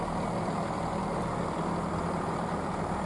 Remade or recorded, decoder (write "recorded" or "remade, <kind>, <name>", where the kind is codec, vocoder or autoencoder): recorded